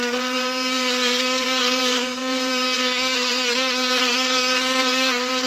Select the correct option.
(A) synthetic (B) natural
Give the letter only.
A